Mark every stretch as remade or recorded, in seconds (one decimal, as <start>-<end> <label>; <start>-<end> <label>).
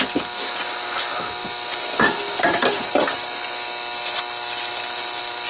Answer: 0.0-5.5 recorded